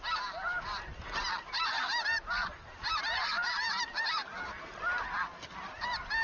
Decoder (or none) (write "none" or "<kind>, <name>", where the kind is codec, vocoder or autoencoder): none